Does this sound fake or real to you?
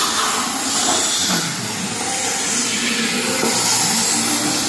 real